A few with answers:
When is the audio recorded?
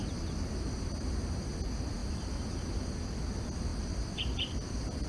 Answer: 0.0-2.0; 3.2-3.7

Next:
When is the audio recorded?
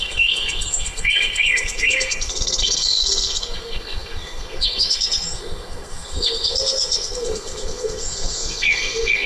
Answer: none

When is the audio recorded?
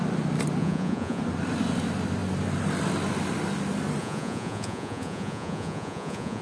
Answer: 0.0-0.6; 1.2-4.0